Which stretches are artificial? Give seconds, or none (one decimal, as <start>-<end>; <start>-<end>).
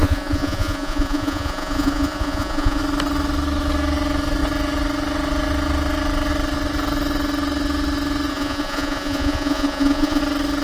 0.0-2.8; 8.3-10.2